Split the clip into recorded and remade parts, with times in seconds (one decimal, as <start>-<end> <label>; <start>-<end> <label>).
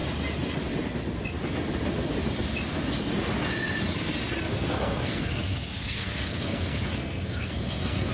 0.0-4.5 recorded; 4.5-8.1 remade